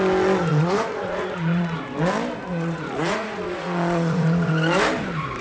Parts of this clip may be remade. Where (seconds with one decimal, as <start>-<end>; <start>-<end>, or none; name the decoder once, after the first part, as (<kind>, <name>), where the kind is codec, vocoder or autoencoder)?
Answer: 0.5-1.8 (vocoder, Vocos); 2.5-4.5

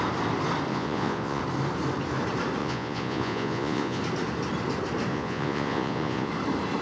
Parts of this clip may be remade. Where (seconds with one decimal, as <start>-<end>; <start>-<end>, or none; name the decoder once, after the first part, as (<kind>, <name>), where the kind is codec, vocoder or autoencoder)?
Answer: 0.7-1.4 (vocoder, Vocos); 2.6-4.0; 5.1-6.3

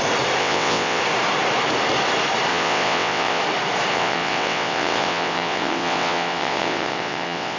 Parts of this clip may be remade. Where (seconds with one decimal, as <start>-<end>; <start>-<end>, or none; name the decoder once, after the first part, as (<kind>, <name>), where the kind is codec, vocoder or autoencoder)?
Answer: 0.4-1.0 (vocoder, WaveNeXt); 2.5-3.4; 3.9-7.6

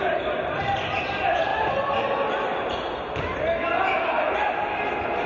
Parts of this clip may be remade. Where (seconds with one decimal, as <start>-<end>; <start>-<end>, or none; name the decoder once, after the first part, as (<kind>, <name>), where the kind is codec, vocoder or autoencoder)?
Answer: none

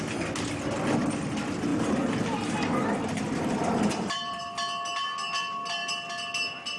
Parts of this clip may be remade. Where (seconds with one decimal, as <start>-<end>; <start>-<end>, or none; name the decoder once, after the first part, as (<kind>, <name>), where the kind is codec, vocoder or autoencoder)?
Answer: 1.7-4.4 (vocoder, BigVGAN v2)

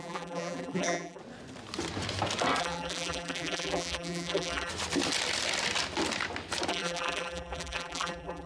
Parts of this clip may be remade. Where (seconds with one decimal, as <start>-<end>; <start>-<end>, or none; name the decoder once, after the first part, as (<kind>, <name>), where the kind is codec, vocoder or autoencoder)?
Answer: 0.0-1.2 (vocoder, BigVGAN v2); 2.6-4.7; 6.7-8.5

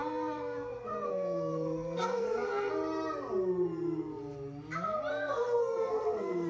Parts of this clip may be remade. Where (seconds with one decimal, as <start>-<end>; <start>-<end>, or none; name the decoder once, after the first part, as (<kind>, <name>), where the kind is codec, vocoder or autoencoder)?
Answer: 0.0-2.7 (codec, SNAC); 5.1-6.5

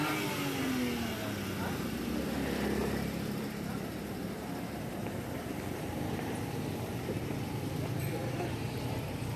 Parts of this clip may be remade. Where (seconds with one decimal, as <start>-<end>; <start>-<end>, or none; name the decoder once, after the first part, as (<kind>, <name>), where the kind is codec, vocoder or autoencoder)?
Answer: 2.8-4.3 (vocoder, BigVGAN v2); 5.0-9.0